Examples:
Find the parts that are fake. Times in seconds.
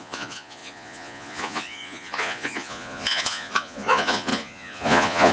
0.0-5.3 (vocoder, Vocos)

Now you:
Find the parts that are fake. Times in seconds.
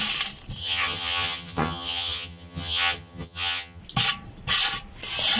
0.6-3.8 (vocoder, HiFi-GAN)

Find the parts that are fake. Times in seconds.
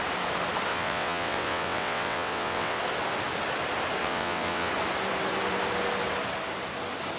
0.7-2.8 (vocoder, WaveNeXt); 4.0-4.7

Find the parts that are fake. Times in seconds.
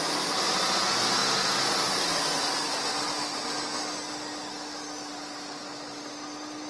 none